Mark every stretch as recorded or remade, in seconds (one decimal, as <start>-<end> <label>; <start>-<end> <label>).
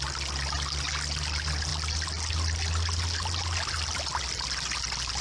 0.0-5.2 recorded